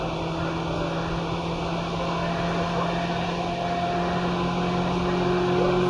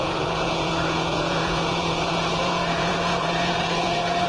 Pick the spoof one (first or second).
second